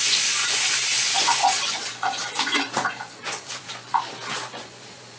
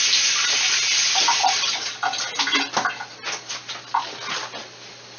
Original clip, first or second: second